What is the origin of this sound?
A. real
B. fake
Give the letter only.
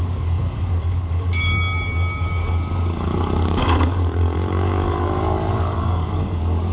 B